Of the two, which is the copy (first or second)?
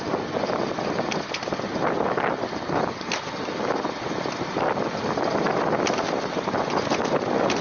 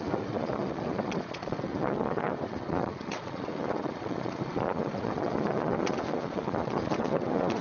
second